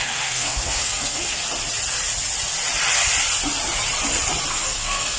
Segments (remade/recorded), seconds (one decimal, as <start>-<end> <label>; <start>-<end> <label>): 0.0-1.4 remade; 1.4-4.5 recorded; 4.5-5.2 remade